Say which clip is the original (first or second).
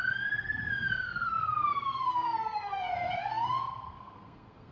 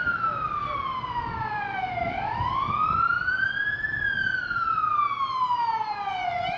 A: second